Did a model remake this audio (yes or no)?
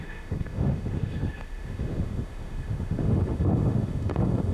yes